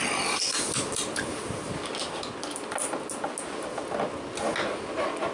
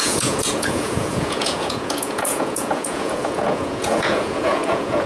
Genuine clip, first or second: first